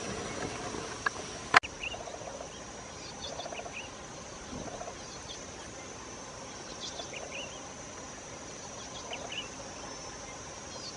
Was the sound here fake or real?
real